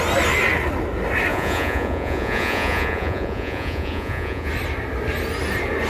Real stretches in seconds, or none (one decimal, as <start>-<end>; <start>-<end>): 0.0-1.3; 4.5-5.9